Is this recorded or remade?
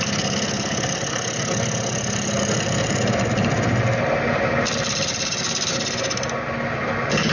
recorded